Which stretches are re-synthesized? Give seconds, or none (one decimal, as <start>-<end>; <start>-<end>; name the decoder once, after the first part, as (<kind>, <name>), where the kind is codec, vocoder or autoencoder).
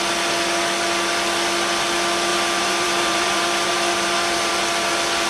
2.3-4.5 (vocoder, BigVGAN v2)